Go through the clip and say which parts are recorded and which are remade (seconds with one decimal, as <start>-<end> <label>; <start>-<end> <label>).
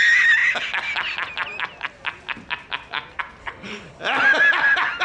0.0-3.4 recorded; 3.4-4.0 remade; 4.0-5.0 recorded